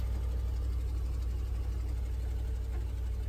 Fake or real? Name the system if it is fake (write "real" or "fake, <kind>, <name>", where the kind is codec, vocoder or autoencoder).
real